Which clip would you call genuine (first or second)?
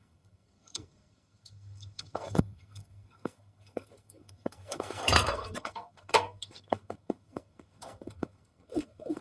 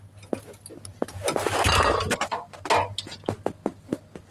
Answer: second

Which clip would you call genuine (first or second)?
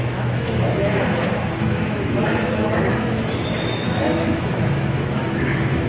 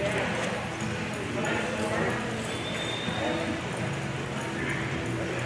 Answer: second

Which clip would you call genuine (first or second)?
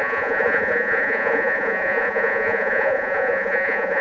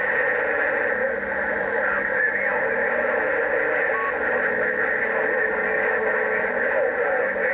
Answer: second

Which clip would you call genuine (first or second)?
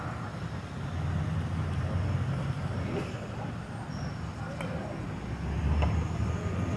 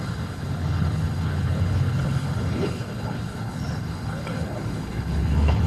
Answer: first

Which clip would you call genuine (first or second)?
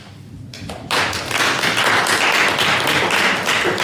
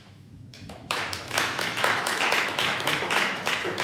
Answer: first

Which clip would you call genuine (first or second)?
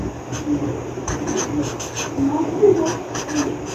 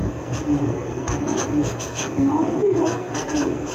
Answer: first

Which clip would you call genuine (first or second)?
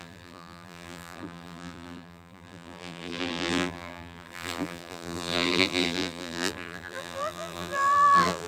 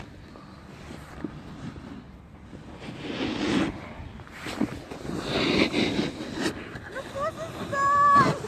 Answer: second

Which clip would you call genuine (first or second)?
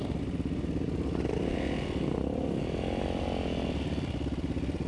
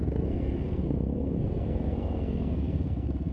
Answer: first